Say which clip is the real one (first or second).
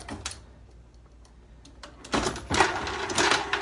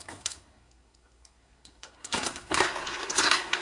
first